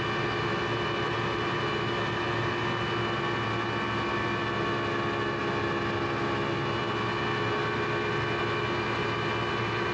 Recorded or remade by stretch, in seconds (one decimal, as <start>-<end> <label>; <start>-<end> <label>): 0.0-9.9 recorded